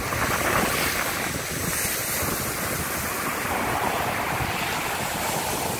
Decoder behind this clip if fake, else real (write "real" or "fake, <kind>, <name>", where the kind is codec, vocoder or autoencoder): real